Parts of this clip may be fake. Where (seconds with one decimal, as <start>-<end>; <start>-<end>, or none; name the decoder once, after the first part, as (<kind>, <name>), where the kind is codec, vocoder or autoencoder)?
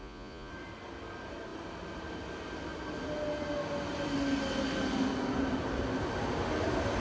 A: 0.0-0.5 (vocoder, Vocos)